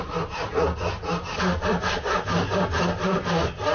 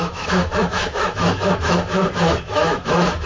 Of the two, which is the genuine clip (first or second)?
first